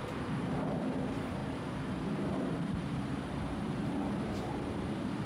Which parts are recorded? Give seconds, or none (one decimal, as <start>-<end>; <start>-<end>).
none